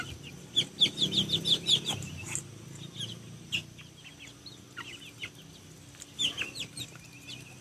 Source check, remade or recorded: recorded